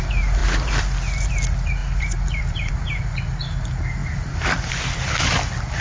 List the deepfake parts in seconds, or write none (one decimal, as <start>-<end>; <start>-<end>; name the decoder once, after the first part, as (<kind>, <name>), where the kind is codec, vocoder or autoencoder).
0.4-1.3 (vocoder, BigVGAN v2); 1.8-2.7; 4.0-5.2